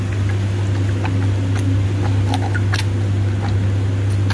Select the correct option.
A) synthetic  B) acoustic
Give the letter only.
B